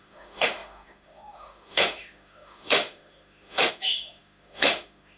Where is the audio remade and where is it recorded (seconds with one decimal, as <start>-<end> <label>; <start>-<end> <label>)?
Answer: 0.0-5.2 remade